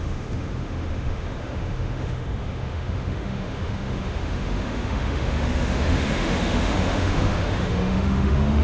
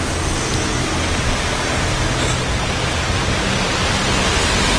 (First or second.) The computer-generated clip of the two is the first